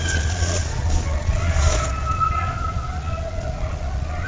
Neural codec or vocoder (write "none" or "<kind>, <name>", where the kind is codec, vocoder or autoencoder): vocoder, Vocos